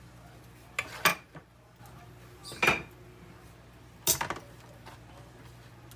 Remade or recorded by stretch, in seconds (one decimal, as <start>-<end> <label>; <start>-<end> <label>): 0.0-6.0 recorded